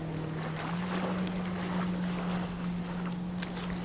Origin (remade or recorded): recorded